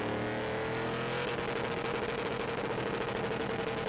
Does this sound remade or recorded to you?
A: recorded